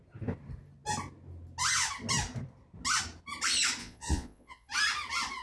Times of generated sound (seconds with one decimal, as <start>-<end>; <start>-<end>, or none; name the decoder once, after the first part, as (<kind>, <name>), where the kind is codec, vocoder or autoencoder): 3.8-4.7 (vocoder, Vocos)